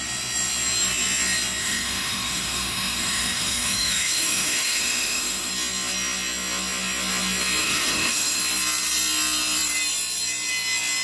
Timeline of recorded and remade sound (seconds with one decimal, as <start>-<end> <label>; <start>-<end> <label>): 0.0-1.6 recorded; 1.6-5.5 remade; 5.5-7.6 recorded; 7.6-8.4 remade; 8.4-11.0 recorded